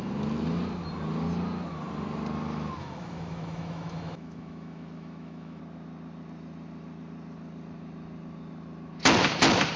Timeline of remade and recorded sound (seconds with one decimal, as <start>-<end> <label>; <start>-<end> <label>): 0.0-2.8 recorded; 2.8-5.6 remade; 5.6-9.8 recorded